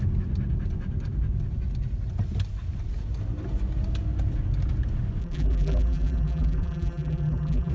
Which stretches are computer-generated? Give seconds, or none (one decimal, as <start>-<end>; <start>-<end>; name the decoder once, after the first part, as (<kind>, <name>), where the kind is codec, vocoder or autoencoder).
5.2-7.7 (vocoder, BigVGAN v2)